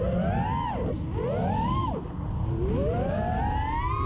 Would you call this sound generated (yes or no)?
no